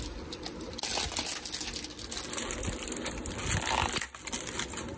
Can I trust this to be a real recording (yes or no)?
yes